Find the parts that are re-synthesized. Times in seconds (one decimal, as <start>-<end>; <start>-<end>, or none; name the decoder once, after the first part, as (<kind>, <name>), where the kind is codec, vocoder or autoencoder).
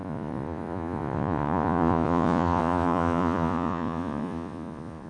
0.0-5.1 (vocoder, Vocos)